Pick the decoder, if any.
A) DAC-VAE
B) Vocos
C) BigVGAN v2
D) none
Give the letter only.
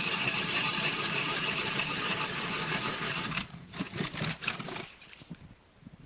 C